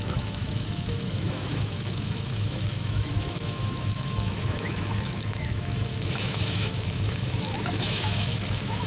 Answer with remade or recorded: remade